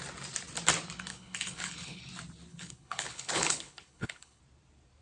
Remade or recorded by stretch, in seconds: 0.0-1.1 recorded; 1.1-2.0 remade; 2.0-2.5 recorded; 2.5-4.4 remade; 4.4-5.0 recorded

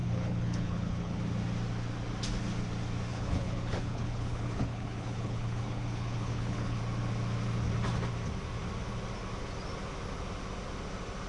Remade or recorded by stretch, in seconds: 0.0-1.2 remade; 1.2-3.1 recorded; 3.1-6.8 remade; 6.8-11.3 recorded

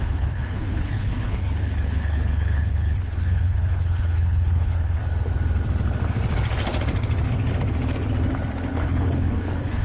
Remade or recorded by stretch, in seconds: 0.0-5.0 remade; 5.0-8.7 recorded; 8.7-9.8 remade

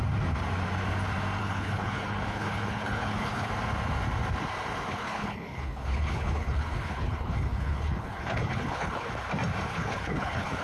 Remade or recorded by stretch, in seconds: 0.0-1.4 recorded; 1.4-3.5 remade; 3.5-4.9 recorded; 4.9-9.1 remade; 9.1-9.7 recorded; 9.7-10.6 remade